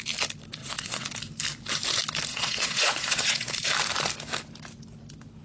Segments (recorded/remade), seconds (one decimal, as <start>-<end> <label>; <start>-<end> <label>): 0.0-0.6 recorded; 0.6-1.1 remade; 1.1-2.3 recorded; 2.3-3.5 remade; 3.5-5.4 recorded